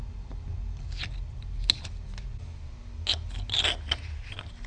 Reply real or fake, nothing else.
real